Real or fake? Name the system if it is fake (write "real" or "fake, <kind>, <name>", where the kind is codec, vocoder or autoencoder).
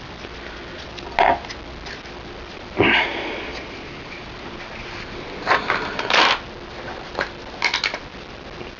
real